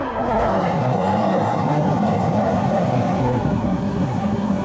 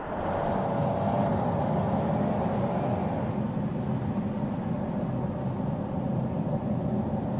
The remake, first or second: first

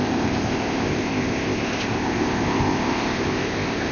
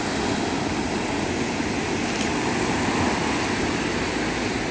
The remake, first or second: first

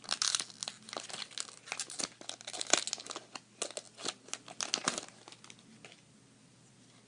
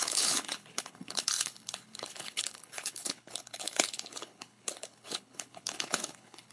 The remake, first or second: second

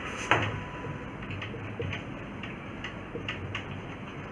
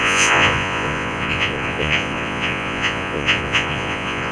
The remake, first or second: second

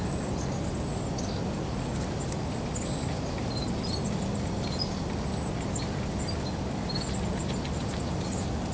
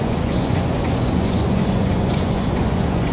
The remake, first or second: second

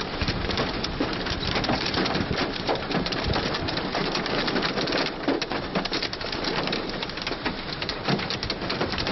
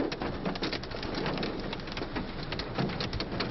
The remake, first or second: first